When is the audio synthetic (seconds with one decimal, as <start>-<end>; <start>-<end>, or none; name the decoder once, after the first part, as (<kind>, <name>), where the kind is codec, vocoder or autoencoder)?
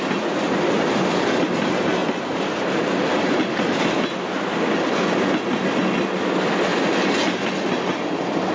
none